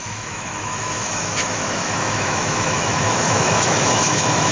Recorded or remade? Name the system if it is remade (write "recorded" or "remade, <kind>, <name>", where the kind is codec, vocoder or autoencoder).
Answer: remade, autoencoder, DAC-VAE